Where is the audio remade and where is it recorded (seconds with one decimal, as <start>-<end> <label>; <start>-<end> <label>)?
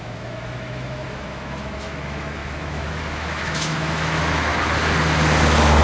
0.0-4.5 remade; 4.5-5.8 recorded